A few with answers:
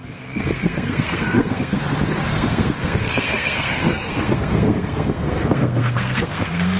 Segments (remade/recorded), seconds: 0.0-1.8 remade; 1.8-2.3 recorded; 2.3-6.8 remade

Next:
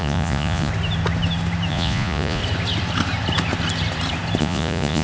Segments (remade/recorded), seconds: 0.0-0.7 remade; 0.7-1.7 recorded; 1.7-2.4 remade; 2.4-4.4 recorded; 4.4-5.0 remade